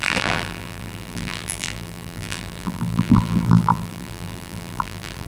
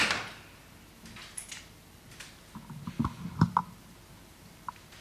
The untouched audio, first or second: second